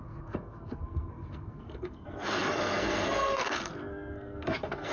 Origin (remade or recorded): remade